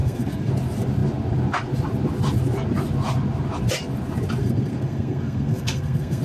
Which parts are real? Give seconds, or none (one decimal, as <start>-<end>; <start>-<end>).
0.5-4.4